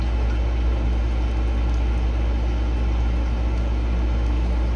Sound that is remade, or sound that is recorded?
recorded